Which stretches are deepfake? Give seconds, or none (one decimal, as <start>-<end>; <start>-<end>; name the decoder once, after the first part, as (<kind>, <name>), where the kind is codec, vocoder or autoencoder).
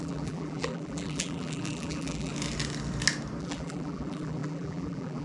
0.0-2.3 (vocoder, BigVGAN v2); 3.4-5.2